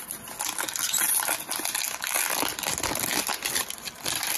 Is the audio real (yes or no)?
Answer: yes